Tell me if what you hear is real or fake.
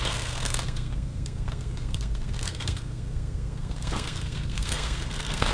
fake